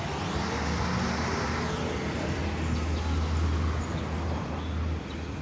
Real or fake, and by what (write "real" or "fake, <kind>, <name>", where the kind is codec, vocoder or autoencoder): real